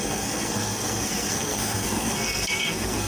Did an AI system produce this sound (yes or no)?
yes